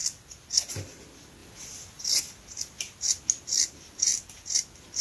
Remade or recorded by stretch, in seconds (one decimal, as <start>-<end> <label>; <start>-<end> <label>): 0.0-5.0 recorded